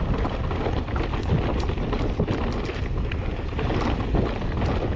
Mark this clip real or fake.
real